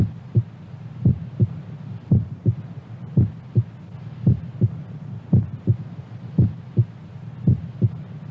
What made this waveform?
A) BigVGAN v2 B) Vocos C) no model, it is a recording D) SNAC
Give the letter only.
C